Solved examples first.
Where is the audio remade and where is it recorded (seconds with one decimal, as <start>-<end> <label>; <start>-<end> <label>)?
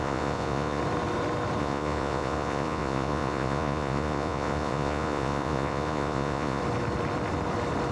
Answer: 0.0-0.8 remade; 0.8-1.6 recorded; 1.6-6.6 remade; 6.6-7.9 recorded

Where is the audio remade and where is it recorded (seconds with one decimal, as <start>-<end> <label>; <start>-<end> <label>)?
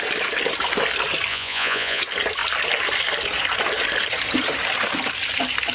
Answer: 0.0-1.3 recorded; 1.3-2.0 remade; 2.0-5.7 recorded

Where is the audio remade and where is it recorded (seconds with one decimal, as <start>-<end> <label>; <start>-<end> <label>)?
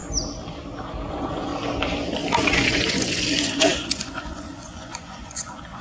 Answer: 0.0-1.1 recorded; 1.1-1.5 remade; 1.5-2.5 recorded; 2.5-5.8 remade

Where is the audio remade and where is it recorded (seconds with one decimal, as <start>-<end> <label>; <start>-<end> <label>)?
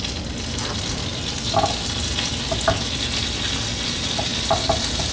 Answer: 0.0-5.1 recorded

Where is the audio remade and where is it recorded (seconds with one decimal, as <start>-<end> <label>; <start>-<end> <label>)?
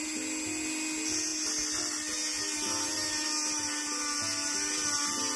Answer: 0.0-5.4 recorded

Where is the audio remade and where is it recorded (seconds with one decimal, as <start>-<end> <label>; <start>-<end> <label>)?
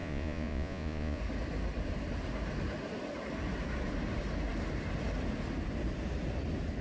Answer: 0.0-1.2 remade; 1.2-6.8 recorded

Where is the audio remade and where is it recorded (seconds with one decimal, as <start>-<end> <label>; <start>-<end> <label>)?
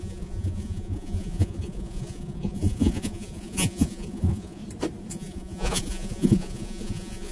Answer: 0.0-4.6 remade; 4.6-5.1 recorded; 5.1-7.3 remade